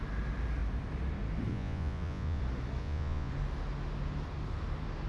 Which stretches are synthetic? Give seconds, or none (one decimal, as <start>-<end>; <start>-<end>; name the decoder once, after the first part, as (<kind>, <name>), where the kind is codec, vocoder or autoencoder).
1.5-2.4 (vocoder, Vocos); 2.8-3.3